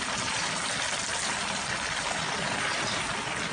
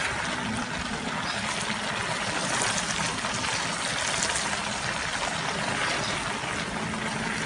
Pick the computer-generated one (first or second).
first